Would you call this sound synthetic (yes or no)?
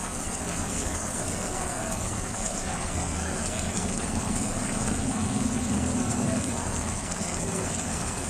yes